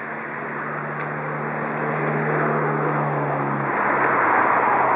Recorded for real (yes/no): yes